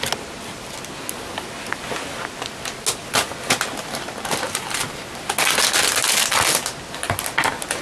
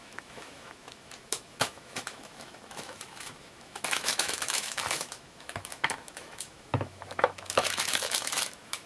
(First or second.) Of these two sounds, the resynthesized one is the second